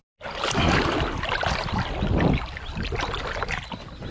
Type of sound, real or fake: real